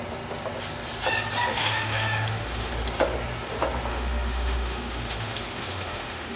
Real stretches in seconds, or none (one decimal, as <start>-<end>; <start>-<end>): 0.0-1.5; 2.7-3.9